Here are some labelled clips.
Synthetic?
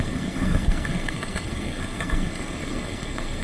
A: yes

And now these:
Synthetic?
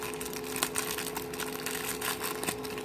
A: no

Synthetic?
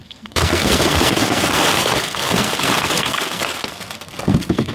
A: yes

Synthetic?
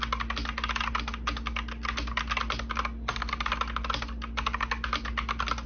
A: no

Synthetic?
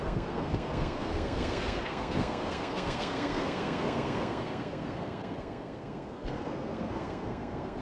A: yes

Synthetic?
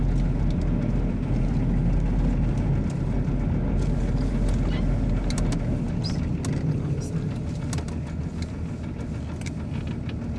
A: no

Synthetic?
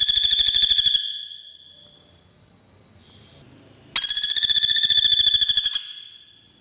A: no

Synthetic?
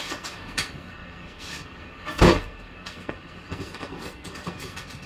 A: yes